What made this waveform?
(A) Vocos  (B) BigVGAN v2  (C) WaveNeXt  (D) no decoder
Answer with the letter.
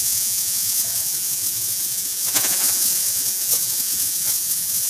A